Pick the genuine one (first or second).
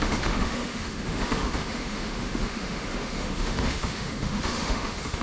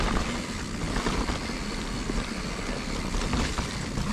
second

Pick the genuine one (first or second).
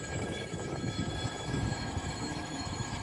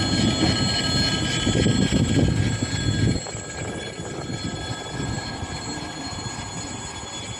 second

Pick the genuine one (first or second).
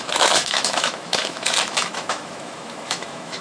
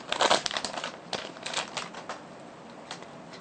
second